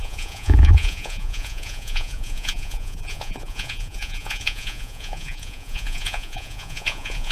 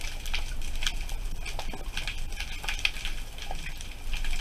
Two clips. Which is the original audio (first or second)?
second